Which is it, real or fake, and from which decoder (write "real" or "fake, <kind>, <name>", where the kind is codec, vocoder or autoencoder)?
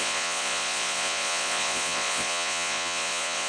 fake, vocoder, Vocos